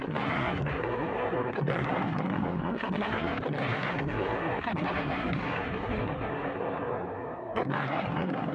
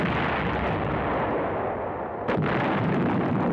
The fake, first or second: first